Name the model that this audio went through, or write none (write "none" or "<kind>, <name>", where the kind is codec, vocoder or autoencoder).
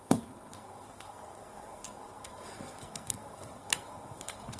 codec, SNAC